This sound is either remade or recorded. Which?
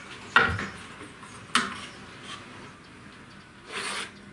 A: recorded